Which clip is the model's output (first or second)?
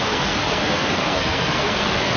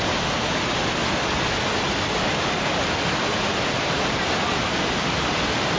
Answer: first